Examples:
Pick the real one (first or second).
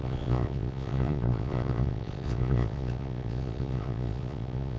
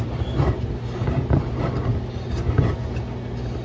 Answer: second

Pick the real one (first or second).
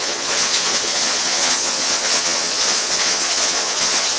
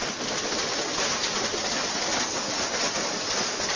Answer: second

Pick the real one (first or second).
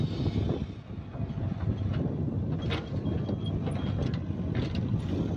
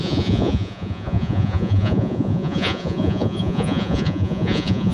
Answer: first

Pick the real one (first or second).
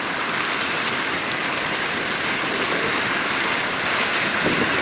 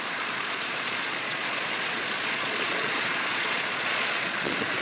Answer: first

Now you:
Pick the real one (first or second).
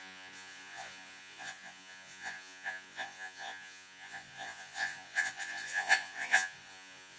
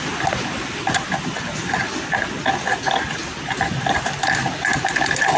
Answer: second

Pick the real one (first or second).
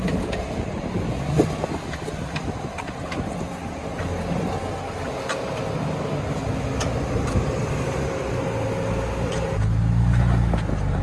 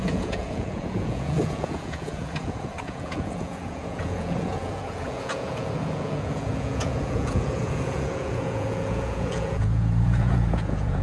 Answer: first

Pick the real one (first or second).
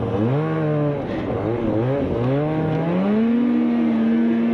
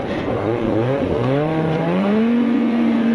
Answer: first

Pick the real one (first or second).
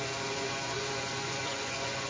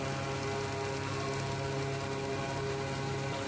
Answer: second